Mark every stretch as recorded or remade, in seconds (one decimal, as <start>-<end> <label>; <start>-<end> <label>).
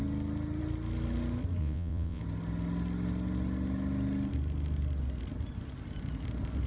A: 0.0-1.6 recorded; 1.6-2.2 remade; 2.2-6.7 recorded